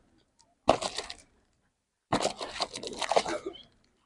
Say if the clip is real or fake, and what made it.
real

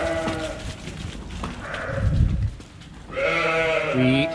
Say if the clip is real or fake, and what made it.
real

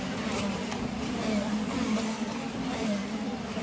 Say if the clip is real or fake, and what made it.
real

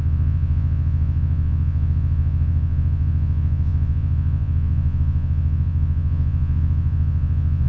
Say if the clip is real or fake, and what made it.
fake, vocoder, Vocos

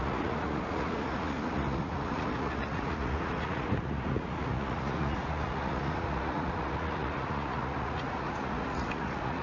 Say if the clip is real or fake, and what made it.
fake, vocoder, Vocos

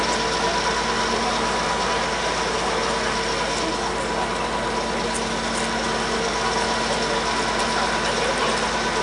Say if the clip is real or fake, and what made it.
real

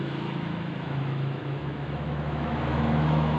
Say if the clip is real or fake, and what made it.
fake, autoencoder, DAC-VAE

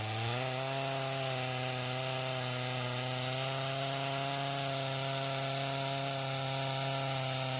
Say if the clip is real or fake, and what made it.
real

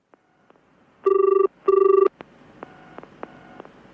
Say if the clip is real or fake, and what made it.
real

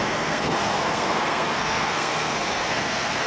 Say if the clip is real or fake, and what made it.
fake, codec, SNAC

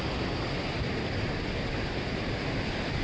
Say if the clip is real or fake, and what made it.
real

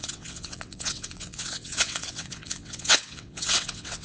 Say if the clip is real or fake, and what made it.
fake, vocoder, WaveNeXt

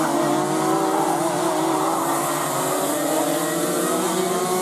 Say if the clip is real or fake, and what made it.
real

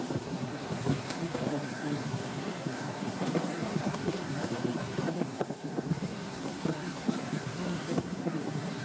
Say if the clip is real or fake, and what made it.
fake, codec, SNAC